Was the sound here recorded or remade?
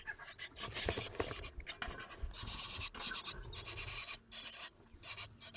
recorded